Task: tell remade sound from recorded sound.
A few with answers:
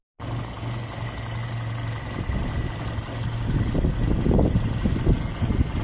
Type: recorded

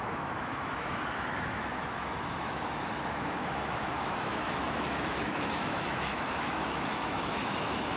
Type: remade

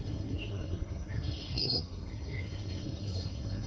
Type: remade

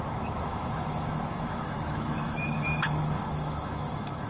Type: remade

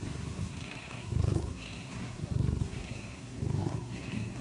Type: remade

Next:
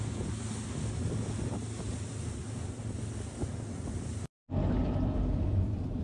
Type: remade